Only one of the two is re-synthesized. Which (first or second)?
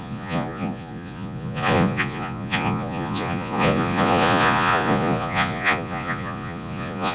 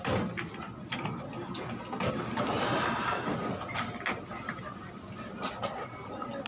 first